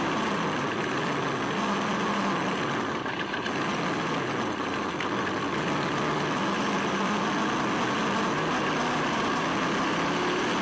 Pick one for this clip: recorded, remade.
recorded